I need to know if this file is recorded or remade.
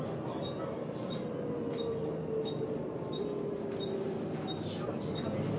recorded